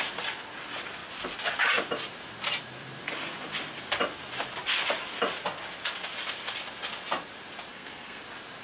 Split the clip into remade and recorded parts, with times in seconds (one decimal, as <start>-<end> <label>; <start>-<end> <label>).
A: 0.0-7.7 recorded; 7.7-8.2 remade; 8.2-8.6 recorded